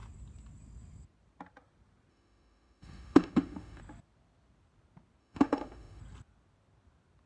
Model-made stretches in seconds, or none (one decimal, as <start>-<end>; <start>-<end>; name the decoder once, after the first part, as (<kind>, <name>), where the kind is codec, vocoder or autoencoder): 2.1-3.8 (autoencoder, DAC-VAE); 5.2-6.0